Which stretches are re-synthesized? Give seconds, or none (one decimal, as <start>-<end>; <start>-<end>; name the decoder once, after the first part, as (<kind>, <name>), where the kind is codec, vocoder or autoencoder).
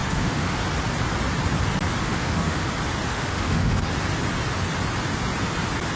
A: 0.0-0.6 (autoencoder, DAC-VAE); 2.0-2.7; 3.1-3.9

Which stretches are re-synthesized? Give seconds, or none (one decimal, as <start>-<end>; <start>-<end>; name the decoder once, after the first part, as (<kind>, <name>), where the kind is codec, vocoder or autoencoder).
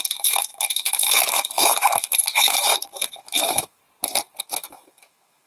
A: 0.0-3.8 (autoencoder, DAC-VAE); 4.4-5.5